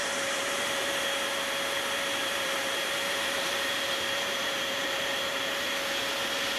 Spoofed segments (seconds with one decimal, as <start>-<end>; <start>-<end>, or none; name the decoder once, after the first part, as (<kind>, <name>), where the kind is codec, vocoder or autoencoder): 0.0-0.9 (vocoder, BigVGAN v2); 2.2-5.7